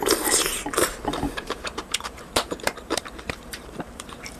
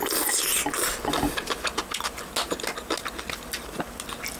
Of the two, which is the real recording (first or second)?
second